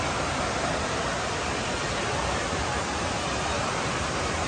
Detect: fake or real real